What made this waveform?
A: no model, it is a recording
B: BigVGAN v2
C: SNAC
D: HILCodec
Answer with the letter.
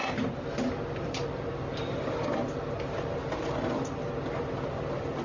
A